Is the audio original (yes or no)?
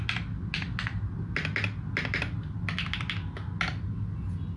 yes